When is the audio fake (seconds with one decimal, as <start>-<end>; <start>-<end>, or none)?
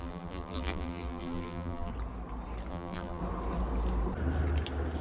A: 0.0-1.9; 2.7-3.2